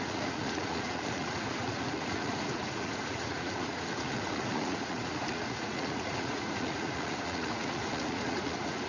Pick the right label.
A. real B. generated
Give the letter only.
B